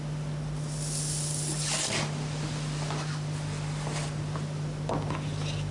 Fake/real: fake